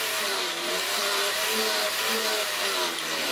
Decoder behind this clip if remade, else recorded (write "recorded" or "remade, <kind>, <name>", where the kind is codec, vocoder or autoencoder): remade, vocoder, BigVGAN v2